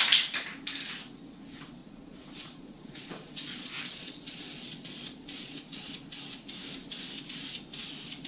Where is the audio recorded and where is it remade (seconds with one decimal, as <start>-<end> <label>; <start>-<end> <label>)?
0.0-1.8 recorded; 1.8-6.0 remade; 6.0-8.3 recorded